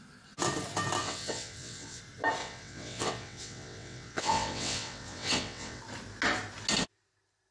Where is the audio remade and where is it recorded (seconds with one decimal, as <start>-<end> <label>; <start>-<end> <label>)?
0.0-1.0 recorded; 1.0-2.0 remade; 2.0-2.4 recorded; 2.4-5.8 remade; 5.8-7.5 recorded